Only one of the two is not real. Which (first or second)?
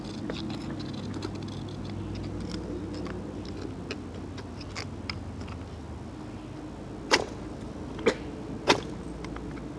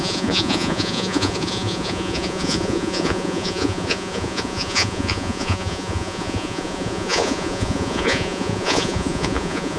second